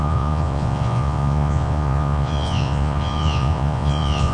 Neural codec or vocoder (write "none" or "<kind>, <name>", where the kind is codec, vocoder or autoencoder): vocoder, Vocos